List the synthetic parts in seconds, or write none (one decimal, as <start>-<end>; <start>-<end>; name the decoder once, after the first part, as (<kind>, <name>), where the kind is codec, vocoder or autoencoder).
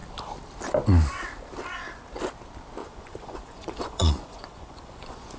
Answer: 2.8-5.4 (vocoder, Vocos)